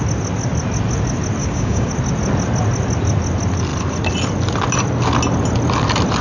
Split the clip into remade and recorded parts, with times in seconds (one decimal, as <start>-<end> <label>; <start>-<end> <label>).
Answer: 0.0-1.4 recorded; 1.4-1.9 remade; 1.9-6.2 recorded